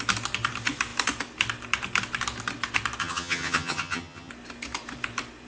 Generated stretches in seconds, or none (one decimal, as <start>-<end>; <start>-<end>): 3.0-4.3